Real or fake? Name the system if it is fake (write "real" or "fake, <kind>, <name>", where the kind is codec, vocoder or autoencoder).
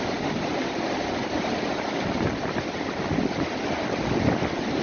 real